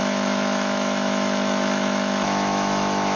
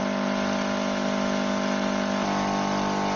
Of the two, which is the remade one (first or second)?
first